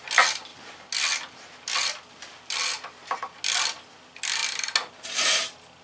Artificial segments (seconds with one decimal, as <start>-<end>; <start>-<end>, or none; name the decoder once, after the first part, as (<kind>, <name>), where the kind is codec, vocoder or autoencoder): none